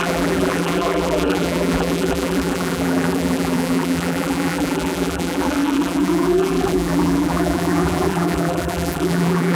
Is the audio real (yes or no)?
no